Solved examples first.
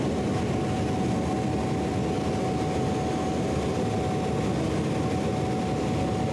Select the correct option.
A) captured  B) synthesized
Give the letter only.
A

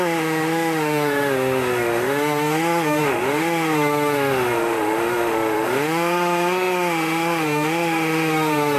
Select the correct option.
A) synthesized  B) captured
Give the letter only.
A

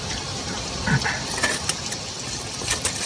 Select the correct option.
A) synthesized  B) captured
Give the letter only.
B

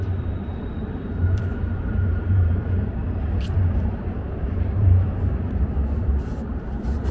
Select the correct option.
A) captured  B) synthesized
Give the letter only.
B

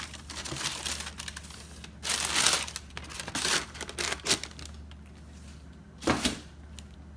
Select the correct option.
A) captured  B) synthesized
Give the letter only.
A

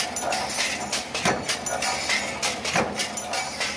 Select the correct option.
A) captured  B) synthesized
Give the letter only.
A